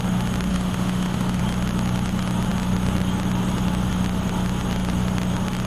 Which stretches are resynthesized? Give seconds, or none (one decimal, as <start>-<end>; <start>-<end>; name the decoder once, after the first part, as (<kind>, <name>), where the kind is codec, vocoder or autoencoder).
0.5-1.4 (autoencoder, DAC-VAE)